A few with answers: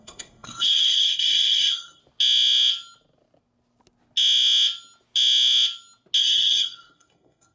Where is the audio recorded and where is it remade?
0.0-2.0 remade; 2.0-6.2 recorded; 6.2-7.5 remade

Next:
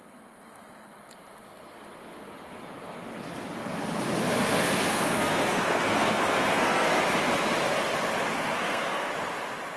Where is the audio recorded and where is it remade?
0.0-4.2 recorded; 4.2-7.0 remade; 7.0-8.3 recorded; 8.3-9.1 remade; 9.1-9.8 recorded

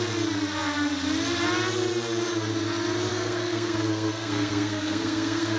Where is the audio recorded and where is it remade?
0.0-3.1 recorded; 3.1-5.6 remade

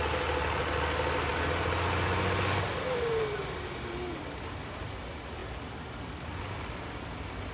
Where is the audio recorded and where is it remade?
0.0-7.5 recorded

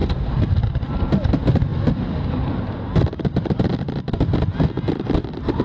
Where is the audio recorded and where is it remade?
0.0-0.6 remade; 0.6-5.6 recorded